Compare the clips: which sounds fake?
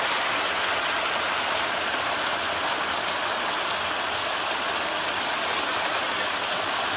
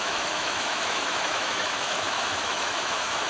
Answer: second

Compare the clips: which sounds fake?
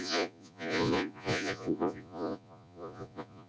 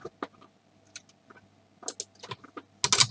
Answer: first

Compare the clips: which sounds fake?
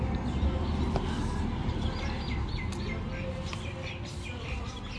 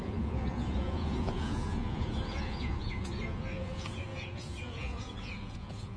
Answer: second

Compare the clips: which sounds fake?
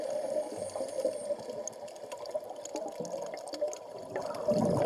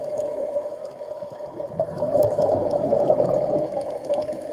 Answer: second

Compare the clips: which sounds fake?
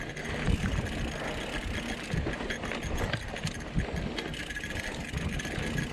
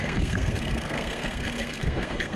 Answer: second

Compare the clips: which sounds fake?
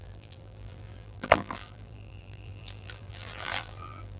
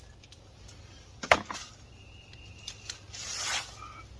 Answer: first